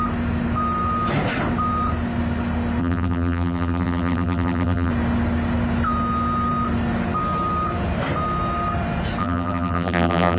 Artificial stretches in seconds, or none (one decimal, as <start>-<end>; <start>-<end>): 2.8-4.9; 9.2-10.4